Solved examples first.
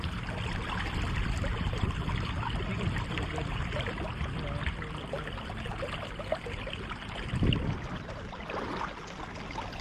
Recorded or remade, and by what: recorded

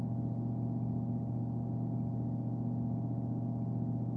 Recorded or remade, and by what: recorded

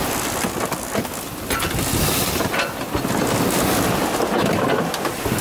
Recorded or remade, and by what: recorded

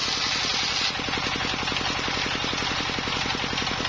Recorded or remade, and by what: recorded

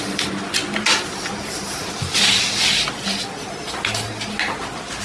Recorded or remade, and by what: recorded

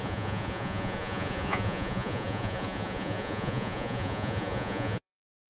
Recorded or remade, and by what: remade, vocoder, Vocos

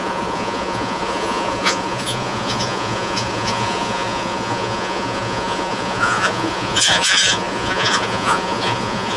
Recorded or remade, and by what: remade, vocoder, Vocos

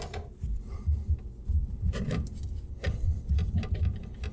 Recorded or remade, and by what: recorded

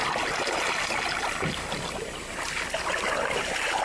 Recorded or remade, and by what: recorded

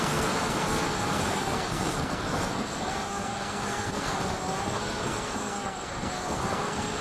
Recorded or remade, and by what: remade, codec, SNAC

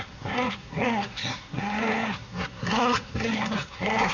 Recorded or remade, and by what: remade, codec, SNAC